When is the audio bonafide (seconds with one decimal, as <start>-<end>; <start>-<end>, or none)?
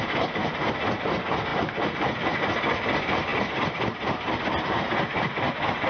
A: 0.0-1.5; 2.4-3.3; 4.4-5.9